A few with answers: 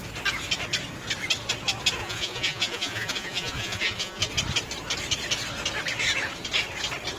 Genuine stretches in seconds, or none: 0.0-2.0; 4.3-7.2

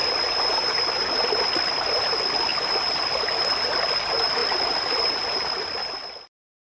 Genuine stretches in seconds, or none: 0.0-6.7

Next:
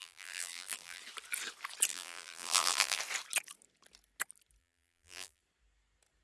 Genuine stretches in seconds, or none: 1.0-1.9; 3.0-4.6; 5.4-6.2

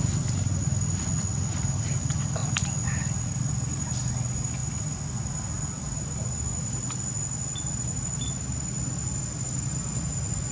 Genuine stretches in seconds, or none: 0.0-10.5

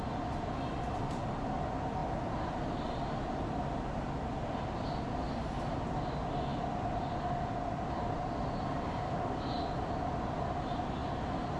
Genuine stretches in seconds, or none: 0.0-11.6

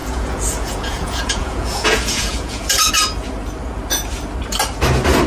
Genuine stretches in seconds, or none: 2.9-5.3

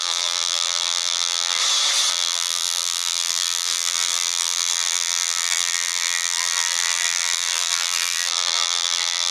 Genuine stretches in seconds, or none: 1.6-2.1

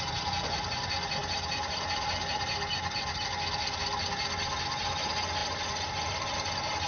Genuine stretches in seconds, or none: 0.0-6.9